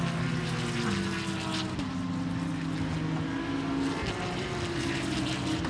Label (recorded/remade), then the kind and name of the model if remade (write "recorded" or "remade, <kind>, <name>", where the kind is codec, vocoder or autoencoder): recorded